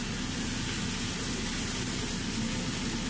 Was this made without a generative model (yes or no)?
yes